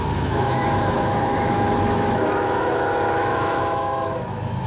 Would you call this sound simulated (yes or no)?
yes